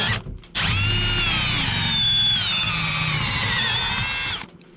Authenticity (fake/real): real